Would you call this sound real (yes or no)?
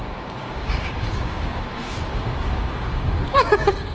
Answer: no